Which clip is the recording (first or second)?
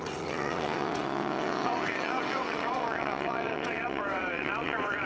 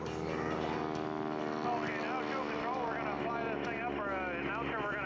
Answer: second